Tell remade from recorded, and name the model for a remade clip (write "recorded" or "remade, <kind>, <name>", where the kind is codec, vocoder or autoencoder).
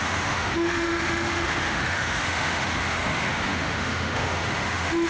remade, autoencoder, DAC-VAE